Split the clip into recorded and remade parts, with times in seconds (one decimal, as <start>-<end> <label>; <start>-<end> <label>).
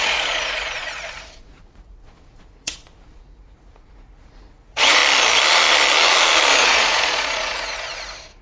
0.0-5.0 remade; 5.0-6.6 recorded; 6.6-8.4 remade